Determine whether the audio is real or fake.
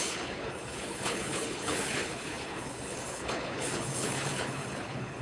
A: fake